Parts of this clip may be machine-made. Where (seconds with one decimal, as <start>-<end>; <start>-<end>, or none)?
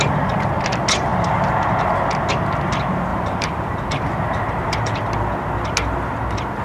3.1-4.9